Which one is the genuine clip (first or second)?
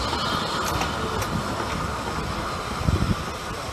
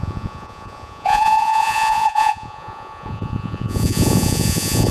first